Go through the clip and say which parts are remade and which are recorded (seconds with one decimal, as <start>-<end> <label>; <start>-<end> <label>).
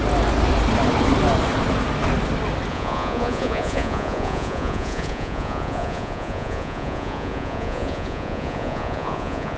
0.0-2.7 recorded; 2.7-9.6 remade